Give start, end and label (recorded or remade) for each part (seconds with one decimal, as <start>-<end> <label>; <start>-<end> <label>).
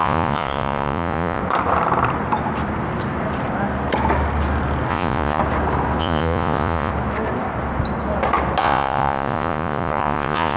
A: 0.0-1.4 remade; 1.4-4.9 recorded; 4.9-5.4 remade; 5.4-6.0 recorded; 6.0-6.9 remade; 6.9-8.6 recorded; 8.6-10.6 remade